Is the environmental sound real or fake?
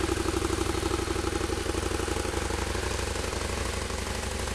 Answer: real